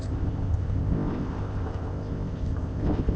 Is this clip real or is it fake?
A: fake